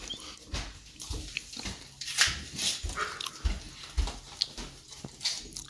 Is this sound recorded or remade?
recorded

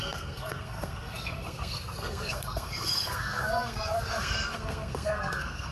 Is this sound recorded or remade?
remade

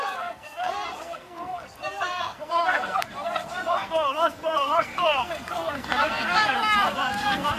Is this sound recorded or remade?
remade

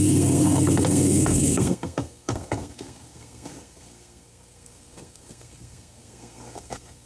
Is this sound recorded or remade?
remade